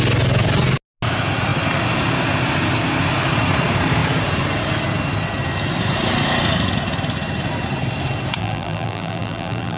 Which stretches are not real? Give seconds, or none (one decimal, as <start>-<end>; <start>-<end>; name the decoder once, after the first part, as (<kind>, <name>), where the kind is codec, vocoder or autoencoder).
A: 8.4-9.8 (vocoder, BigVGAN v2)